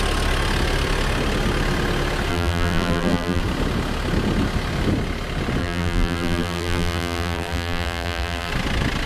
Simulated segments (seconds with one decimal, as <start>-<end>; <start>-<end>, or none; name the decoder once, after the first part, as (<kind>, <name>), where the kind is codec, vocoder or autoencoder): 2.3-3.4 (vocoder, BigVGAN v2); 5.6-8.5

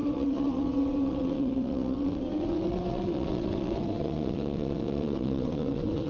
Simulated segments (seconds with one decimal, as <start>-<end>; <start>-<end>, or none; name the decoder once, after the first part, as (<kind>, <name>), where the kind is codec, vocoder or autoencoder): 0.0-6.1 (vocoder, WaveNeXt)

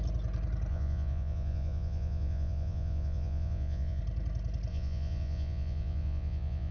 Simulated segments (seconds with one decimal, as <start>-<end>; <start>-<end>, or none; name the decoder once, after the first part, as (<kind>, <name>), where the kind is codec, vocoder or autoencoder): 0.7-4.0 (vocoder, Vocos); 4.7-6.7